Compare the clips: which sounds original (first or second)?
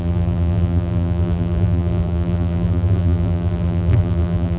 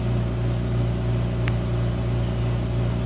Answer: second